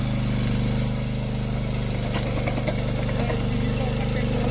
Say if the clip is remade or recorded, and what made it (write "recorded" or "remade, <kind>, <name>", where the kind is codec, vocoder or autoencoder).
recorded